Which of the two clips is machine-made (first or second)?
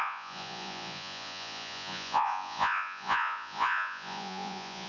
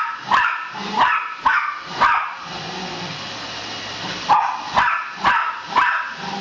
first